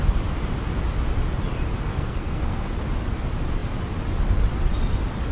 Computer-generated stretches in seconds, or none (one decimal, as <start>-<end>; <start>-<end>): 1.9-2.7